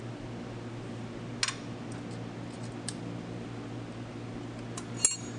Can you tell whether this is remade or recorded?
recorded